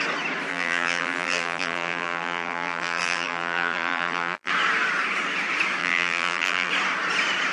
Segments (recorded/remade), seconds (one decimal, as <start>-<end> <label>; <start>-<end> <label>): 0.0-0.5 recorded; 0.5-4.5 remade; 4.5-5.8 recorded; 5.8-6.7 remade; 6.7-7.5 recorded